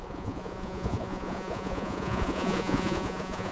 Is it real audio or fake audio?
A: fake